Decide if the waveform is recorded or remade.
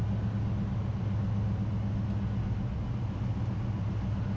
recorded